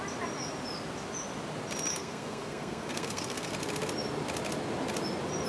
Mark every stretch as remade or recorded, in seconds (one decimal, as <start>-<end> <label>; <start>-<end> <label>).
0.0-1.9 recorded; 1.9-3.5 remade; 3.5-5.5 recorded